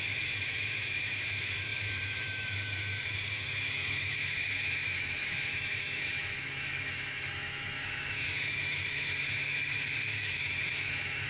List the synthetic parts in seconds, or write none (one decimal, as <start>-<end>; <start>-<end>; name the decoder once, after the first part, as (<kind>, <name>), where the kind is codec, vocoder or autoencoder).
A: 0.0-11.3 (autoencoder, DAC-VAE)